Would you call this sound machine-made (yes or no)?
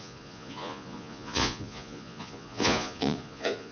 yes